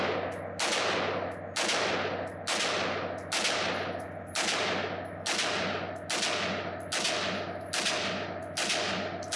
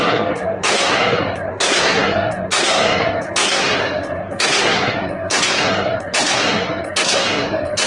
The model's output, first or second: second